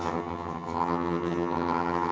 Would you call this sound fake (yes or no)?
yes